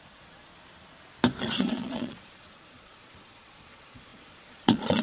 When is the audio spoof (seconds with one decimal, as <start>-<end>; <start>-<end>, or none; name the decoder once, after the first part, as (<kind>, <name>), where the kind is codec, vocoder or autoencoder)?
0.0-0.5 (vocoder, Vocos); 1.4-5.0